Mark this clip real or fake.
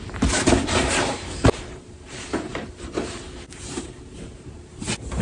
fake